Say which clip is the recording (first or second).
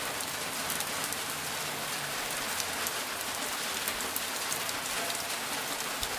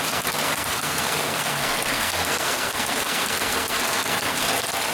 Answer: first